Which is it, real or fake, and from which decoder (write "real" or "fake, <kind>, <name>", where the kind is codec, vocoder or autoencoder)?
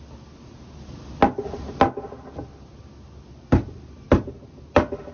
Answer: real